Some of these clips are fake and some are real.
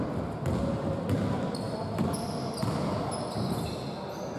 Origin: real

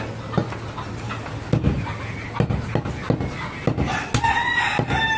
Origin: real